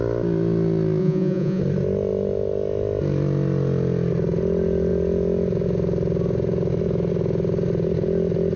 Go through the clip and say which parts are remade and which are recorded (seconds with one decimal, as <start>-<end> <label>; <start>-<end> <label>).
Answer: 0.0-1.0 recorded; 1.0-1.6 remade; 1.6-8.6 recorded